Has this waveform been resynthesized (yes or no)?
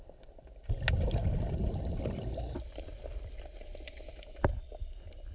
no